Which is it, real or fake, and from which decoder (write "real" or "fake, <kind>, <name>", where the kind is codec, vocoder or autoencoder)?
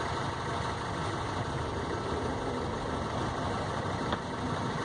real